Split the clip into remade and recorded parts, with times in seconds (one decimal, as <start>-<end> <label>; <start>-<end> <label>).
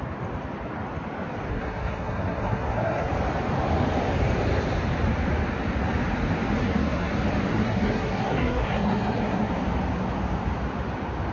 0.0-1.5 recorded; 1.5-3.1 remade; 3.1-6.6 recorded; 6.6-7.1 remade; 7.1-7.5 recorded; 7.5-9.5 remade; 9.5-11.3 recorded